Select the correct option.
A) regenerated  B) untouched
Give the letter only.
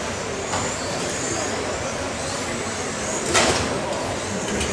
B